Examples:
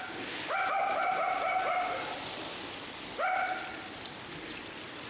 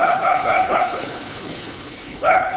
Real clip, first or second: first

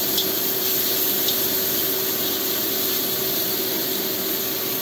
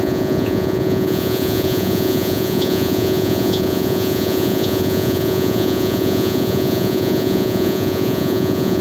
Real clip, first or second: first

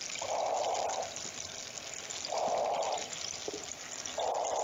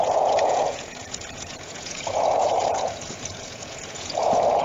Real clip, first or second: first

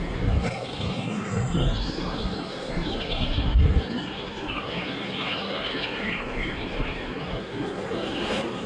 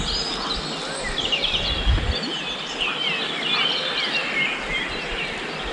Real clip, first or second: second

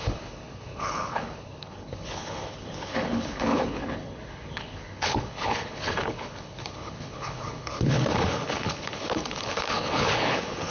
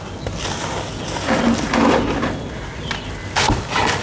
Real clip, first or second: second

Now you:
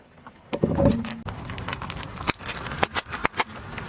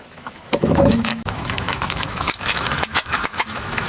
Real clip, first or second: first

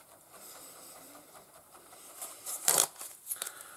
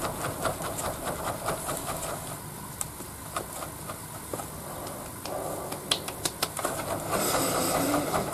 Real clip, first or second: second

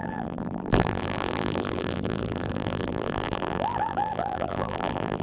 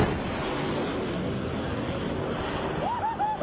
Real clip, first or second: second